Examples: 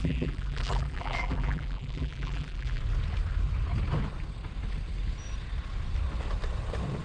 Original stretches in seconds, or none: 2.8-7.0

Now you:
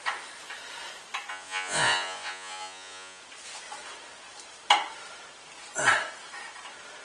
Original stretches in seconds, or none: 0.0-1.3; 3.2-7.0

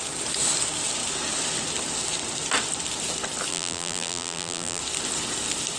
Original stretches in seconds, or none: 0.0-3.5; 4.8-5.8

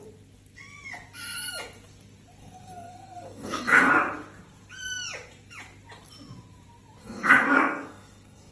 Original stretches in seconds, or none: 0.0-2.4; 3.9-7.0

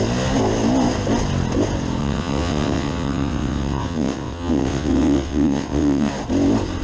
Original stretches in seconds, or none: 0.0-2.0; 6.1-6.8